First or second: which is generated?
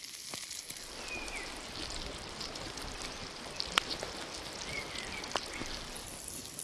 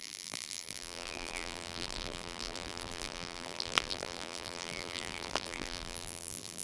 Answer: second